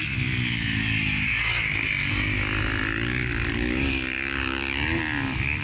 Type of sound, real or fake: real